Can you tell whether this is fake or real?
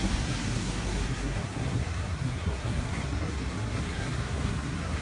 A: fake